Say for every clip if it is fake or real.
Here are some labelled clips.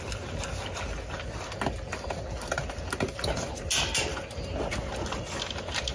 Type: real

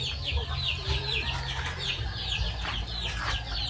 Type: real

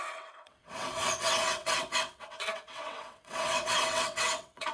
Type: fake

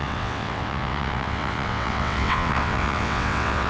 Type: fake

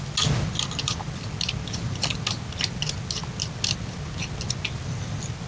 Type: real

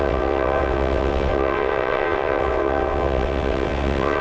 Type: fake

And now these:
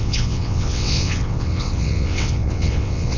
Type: fake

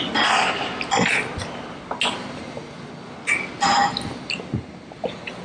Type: real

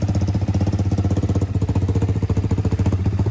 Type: real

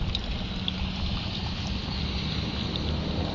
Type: real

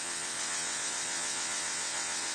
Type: fake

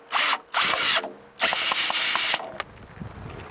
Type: real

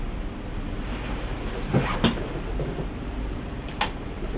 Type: real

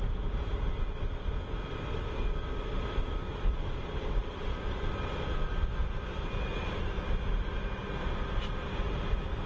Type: real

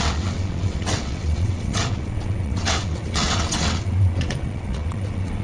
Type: fake